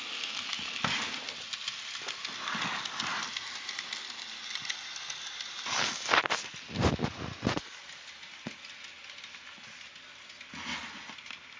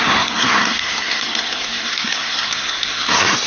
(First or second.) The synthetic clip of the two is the second